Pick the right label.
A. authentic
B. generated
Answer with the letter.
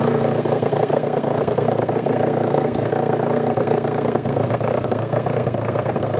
B